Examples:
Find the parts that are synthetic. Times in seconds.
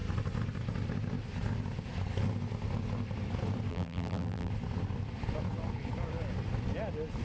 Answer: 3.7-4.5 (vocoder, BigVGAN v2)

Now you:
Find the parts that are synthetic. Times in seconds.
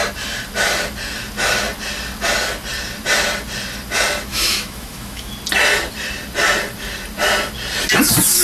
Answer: 4.3-5.3 (autoencoder, DAC-VAE)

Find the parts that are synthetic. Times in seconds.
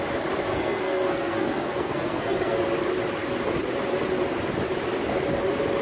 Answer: 0.5-2.6 (codec, SNAC)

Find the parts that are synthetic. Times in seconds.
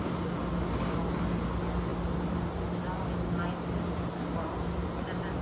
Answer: none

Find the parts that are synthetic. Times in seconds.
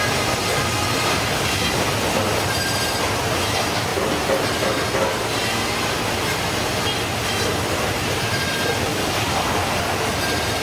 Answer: 8.9-9.6 (codec, DAC)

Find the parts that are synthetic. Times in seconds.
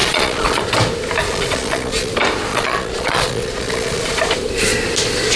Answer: 0.0-0.6 (vocoder, Vocos); 1.2-2.1; 2.5-4.2